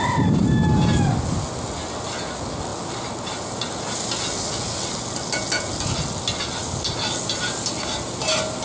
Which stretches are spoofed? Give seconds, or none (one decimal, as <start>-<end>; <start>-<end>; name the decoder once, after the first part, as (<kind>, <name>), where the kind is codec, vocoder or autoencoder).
none